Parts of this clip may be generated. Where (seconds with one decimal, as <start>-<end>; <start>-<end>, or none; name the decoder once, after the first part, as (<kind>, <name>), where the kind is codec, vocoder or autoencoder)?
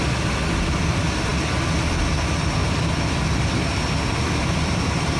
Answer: none